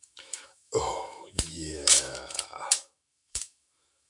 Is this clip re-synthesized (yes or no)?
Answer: yes